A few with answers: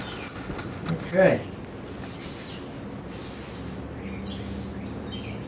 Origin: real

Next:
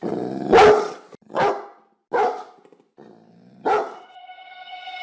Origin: real